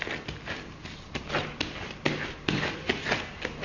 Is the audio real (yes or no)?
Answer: yes